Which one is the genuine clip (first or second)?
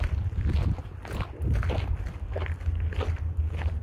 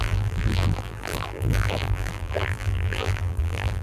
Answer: first